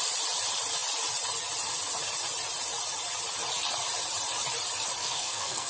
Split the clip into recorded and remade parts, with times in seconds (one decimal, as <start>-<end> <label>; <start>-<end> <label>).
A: 0.0-5.0 recorded; 5.0-5.7 remade